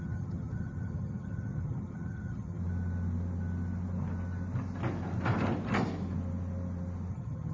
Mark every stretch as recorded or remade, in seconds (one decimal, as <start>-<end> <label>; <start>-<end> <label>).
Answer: 0.0-2.6 remade; 2.6-7.1 recorded; 7.1-7.5 remade